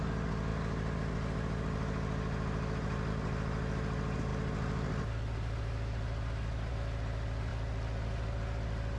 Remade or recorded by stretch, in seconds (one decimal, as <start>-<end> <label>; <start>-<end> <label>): 0.0-9.0 recorded